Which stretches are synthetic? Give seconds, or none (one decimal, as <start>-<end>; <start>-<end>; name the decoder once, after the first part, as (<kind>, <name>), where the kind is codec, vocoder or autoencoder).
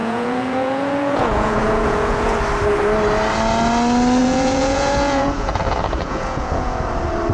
0.0-2.4 (vocoder, Vocos); 4.2-6.8